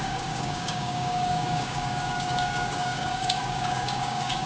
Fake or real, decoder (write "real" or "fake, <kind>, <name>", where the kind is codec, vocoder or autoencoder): fake, codec, DAC